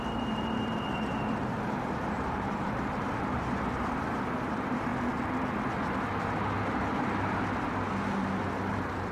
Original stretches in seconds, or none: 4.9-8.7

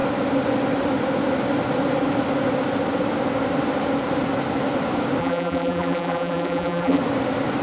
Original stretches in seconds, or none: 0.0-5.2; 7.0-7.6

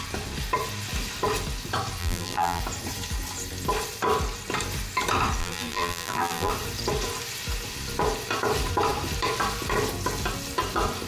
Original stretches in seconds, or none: 0.0-2.0; 2.6-5.4; 6.5-11.1

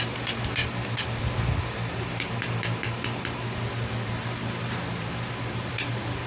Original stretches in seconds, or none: 0.6-4.2

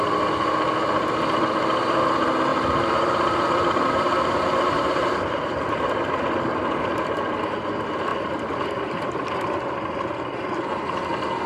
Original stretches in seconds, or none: 0.0-2.5; 6.1-8.1; 9.3-11.5

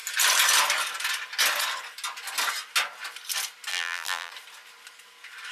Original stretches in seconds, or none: 0.0-3.7; 4.3-5.5

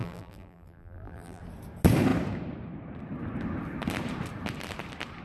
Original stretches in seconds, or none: 1.4-5.2

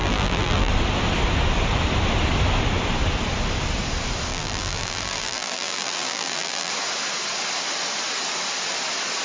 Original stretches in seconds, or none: 0.7-4.3; 6.7-9.2